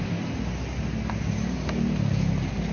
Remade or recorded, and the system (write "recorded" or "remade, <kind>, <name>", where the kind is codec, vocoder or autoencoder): recorded